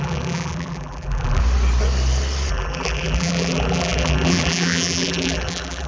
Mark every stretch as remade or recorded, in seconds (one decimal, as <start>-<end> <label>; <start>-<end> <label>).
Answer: 0.0-1.4 remade; 1.4-2.5 recorded; 2.5-5.9 remade